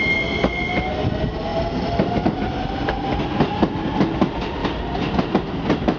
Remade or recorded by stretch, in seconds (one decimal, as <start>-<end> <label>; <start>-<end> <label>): 0.0-6.0 recorded